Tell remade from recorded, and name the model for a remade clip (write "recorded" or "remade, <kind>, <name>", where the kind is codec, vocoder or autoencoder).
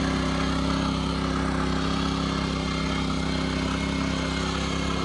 recorded